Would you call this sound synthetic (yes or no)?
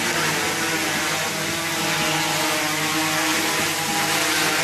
no